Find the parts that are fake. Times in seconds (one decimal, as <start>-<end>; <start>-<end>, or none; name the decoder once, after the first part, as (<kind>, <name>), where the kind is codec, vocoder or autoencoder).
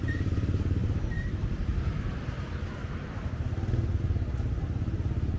none